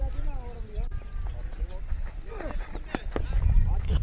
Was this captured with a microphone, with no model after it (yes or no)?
yes